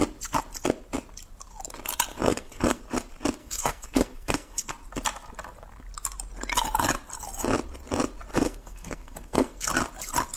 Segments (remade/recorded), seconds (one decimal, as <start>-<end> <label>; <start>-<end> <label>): 0.0-2.1 recorded; 2.1-2.8 remade; 2.8-3.4 recorded; 3.4-4.7 remade; 4.7-8.3 recorded; 8.3-9.7 remade; 9.7-10.4 recorded